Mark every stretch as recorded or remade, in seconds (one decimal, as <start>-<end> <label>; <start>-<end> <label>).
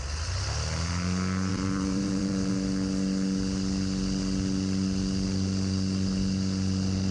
0.0-1.5 recorded; 1.5-2.5 remade; 2.5-7.1 recorded